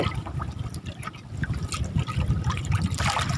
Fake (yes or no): no